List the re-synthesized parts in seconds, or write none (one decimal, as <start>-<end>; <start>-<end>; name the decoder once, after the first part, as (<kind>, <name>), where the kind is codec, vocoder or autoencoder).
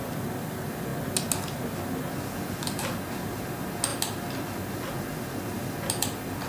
none